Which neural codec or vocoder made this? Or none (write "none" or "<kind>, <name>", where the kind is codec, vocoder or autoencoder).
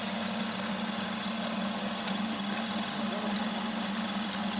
none